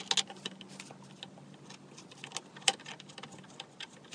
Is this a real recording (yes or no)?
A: yes